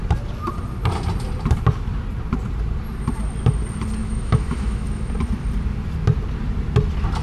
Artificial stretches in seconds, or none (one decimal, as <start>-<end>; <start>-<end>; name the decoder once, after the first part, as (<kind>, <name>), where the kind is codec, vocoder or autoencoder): 4.0-5.1 (autoencoder, DAC-VAE)